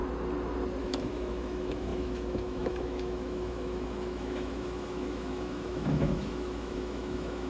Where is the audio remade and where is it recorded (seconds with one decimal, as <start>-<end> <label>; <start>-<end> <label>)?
0.0-0.8 recorded; 0.8-7.5 remade